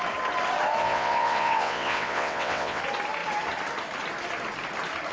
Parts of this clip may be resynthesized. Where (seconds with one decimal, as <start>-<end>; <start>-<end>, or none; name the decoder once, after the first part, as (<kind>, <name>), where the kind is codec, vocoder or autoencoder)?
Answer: 0.8-2.8 (vocoder, WaveNeXt)